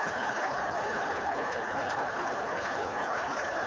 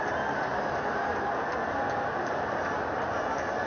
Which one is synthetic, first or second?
first